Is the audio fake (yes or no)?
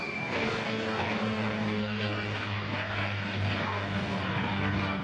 yes